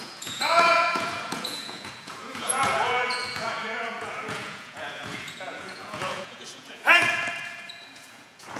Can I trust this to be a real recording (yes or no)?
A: no